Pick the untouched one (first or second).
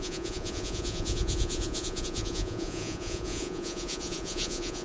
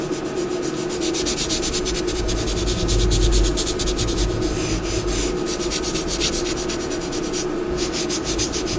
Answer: second